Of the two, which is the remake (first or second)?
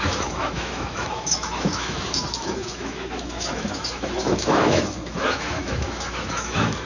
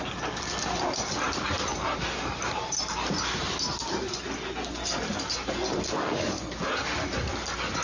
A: first